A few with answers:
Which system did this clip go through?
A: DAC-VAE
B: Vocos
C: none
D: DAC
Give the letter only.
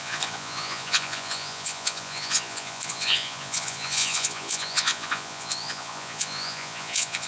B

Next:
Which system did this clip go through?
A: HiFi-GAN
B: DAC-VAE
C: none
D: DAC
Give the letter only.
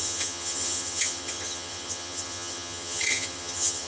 A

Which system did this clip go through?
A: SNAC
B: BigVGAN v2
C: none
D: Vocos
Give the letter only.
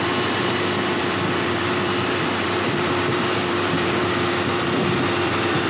B